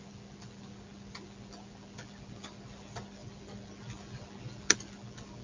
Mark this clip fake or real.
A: real